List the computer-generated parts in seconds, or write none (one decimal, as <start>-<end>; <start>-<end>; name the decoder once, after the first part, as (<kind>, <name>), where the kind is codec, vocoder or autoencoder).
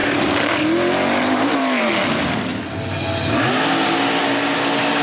0.0-0.6 (vocoder, BigVGAN v2); 1.2-1.9